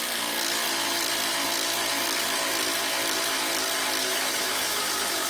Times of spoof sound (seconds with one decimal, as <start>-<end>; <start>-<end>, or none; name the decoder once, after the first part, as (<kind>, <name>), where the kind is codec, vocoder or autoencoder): 4.0-5.3 (autoencoder, DAC-VAE)